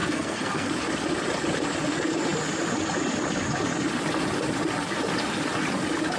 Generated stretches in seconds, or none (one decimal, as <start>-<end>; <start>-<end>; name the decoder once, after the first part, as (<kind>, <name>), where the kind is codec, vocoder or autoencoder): 0.0-0.7 (codec, SNAC)